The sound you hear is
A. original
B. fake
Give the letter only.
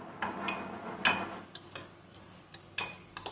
A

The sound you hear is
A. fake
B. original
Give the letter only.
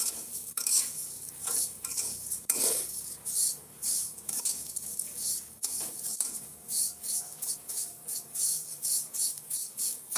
A